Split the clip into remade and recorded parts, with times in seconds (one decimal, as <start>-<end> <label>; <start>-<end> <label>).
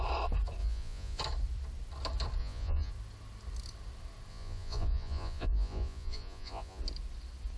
0.0-0.6 recorded; 0.6-1.2 remade; 1.2-2.4 recorded; 2.4-2.9 remade; 2.9-4.3 recorded; 4.3-6.8 remade; 6.8-7.6 recorded